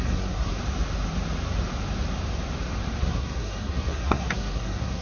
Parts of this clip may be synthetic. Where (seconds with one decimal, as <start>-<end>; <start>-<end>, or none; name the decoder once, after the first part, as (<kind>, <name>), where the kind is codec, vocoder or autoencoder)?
0.0-0.5 (codec, SNAC); 3.0-5.0